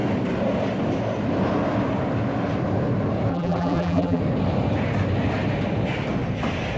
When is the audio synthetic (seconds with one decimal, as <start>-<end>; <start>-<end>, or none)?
3.3-4.2

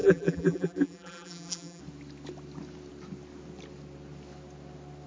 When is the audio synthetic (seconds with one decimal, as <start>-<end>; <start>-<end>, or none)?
0.0-1.8

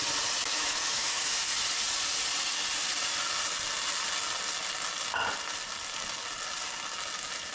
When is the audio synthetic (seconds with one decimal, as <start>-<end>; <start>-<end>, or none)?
0.4-1.2

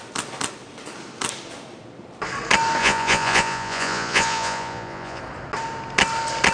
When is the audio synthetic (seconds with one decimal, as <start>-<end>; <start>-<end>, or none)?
2.8-5.2